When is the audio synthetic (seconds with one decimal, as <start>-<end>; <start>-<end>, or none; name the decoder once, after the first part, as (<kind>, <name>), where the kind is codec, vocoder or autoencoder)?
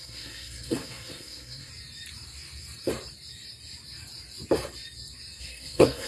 0.0-1.7 (codec, SNAC); 5.4-6.1